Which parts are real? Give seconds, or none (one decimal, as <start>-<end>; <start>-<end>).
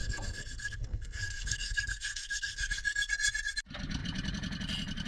3.1-5.1